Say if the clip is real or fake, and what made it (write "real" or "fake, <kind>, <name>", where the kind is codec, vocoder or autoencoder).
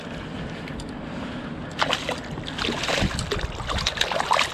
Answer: real